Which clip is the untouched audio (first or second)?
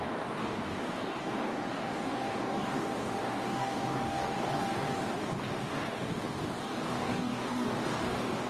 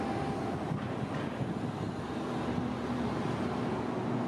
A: second